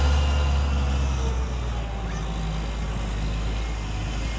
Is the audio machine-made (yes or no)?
no